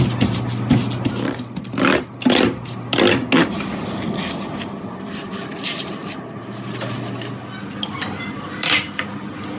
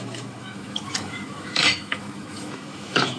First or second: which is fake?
second